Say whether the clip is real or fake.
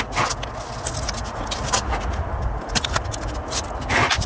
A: real